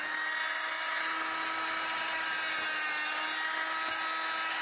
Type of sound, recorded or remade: recorded